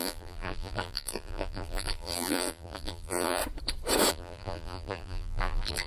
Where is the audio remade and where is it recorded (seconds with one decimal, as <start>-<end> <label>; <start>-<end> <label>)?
0.0-3.4 remade; 3.4-4.1 recorded; 4.1-5.9 remade